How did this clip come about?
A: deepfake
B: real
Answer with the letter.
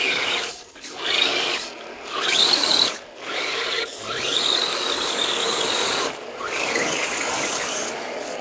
A